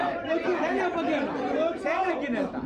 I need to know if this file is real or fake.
real